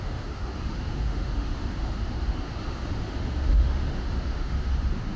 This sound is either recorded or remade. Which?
remade